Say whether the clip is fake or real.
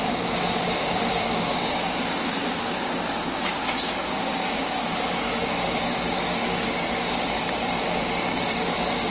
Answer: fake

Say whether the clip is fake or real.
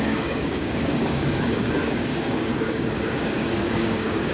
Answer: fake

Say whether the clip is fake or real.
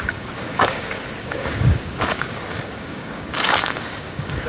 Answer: fake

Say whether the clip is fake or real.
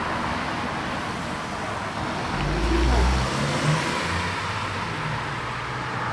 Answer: real